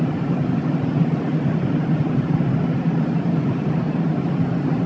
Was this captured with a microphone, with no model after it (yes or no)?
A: yes